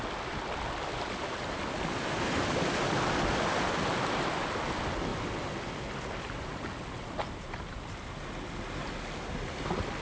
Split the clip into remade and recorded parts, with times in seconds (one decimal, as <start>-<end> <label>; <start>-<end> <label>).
0.0-10.0 recorded